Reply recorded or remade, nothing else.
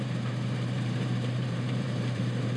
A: remade